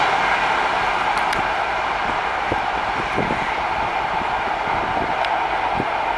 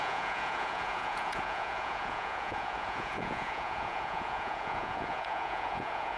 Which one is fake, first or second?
second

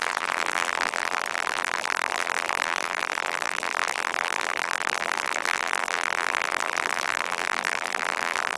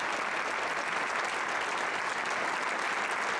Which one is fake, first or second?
first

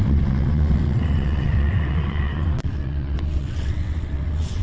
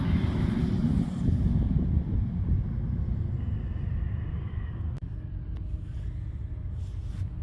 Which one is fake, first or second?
first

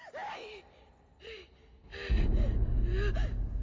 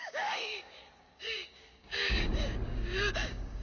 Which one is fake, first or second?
second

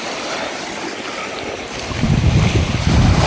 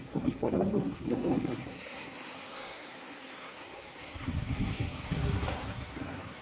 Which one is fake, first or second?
second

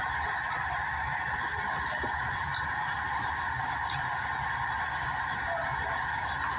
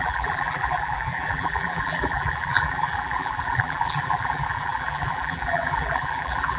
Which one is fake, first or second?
second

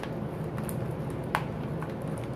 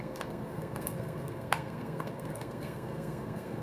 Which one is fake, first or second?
second